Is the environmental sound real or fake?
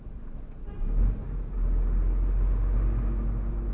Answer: real